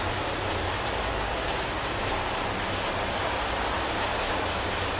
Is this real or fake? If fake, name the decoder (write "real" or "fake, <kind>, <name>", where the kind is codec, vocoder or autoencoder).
real